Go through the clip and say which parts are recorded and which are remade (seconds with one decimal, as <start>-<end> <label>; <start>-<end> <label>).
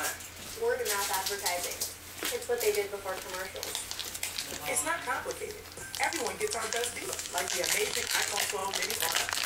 0.0-6.6 recorded; 6.6-8.2 remade; 8.2-9.5 recorded